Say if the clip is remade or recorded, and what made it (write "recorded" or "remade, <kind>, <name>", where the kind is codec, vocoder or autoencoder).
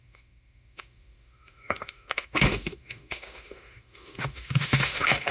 remade, autoencoder, DAC-VAE